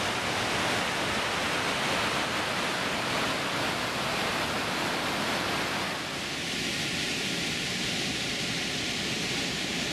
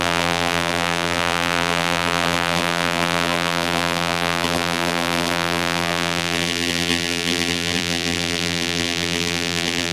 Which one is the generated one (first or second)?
second